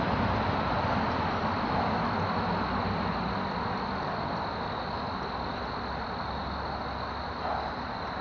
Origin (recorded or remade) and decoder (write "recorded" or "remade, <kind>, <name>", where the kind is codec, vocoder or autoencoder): recorded